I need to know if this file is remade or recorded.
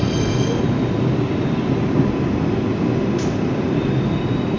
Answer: recorded